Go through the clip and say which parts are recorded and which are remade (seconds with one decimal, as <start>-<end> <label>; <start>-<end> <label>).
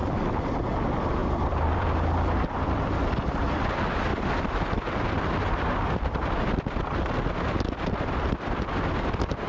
0.0-1.2 recorded; 1.2-3.6 remade; 3.6-4.1 recorded; 4.1-7.3 remade; 7.3-9.5 recorded